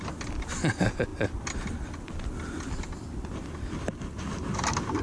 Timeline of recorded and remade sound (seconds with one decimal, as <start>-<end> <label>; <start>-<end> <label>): 0.0-5.0 recorded